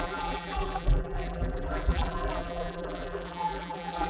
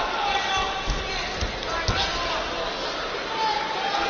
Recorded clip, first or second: second